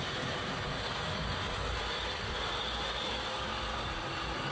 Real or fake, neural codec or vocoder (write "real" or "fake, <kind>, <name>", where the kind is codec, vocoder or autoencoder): real